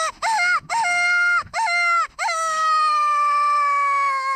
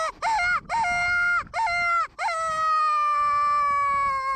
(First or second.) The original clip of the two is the second